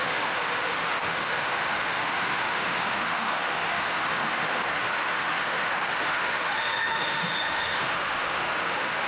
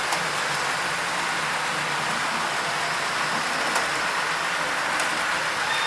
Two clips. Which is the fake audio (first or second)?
first